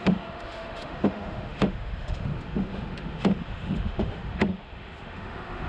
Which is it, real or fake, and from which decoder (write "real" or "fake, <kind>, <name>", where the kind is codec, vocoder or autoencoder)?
fake, autoencoder, DAC-VAE